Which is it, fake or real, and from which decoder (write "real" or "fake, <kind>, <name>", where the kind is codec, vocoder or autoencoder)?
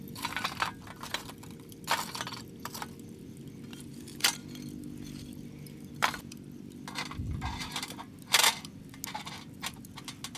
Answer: real